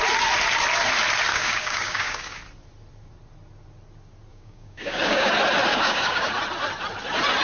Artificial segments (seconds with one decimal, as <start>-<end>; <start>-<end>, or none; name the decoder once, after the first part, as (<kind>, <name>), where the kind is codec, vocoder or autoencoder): 1.3-2.4 (codec, DAC); 4.3-5.3; 5.7-6.3